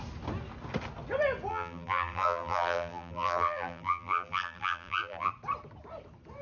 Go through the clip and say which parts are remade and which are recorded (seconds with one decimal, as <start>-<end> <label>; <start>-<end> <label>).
0.0-1.5 recorded; 1.5-5.3 remade; 5.3-6.4 recorded